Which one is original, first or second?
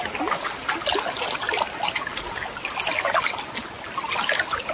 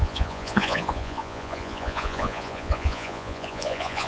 first